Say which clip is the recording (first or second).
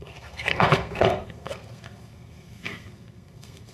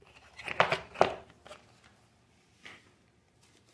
second